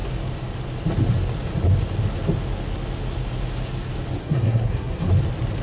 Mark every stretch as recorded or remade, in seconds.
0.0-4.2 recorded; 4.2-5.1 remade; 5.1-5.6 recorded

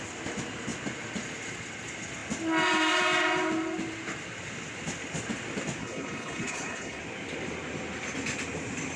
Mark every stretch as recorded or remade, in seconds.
0.0-5.8 recorded; 5.8-7.0 remade; 7.0-9.0 recorded

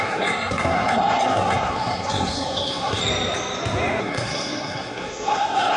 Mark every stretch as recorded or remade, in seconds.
0.0-3.0 remade; 3.0-4.0 recorded; 4.0-5.8 remade

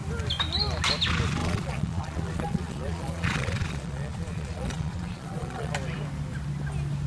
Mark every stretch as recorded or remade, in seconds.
0.0-1.4 recorded; 1.4-5.7 remade; 5.7-7.1 recorded

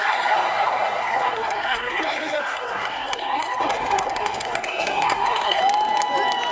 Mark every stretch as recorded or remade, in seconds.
0.0-5.6 remade; 5.6-6.5 recorded